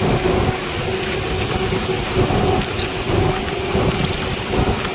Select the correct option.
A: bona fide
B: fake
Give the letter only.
A